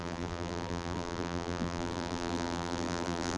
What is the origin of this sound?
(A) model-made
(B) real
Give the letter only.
A